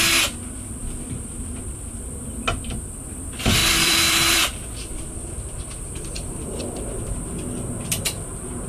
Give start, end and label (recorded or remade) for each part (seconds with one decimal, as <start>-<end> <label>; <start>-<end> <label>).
0.0-3.6 recorded; 3.6-6.6 remade; 6.6-8.7 recorded